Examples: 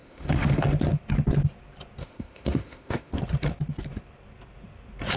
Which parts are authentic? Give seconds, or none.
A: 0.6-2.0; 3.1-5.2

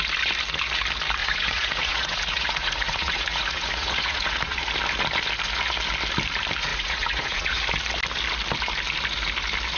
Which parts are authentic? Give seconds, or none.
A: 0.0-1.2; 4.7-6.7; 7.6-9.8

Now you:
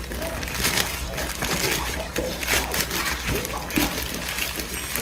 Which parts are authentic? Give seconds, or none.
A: 0.0-2.4; 3.0-5.0

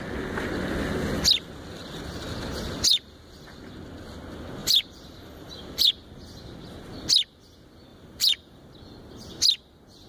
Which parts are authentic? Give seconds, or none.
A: 0.0-2.9; 3.6-4.6; 5.9-7.9; 8.7-10.1

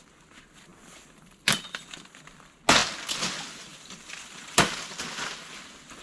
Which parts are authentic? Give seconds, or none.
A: 0.0-0.7; 1.8-3.7

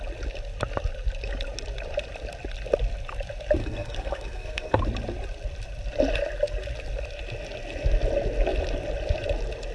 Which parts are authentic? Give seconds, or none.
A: 0.0-3.6; 4.8-9.7